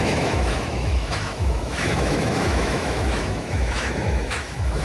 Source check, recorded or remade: remade